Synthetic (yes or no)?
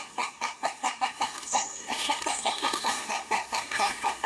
yes